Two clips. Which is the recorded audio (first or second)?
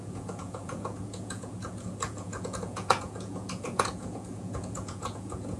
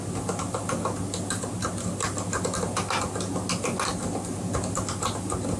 second